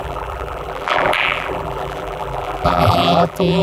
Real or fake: fake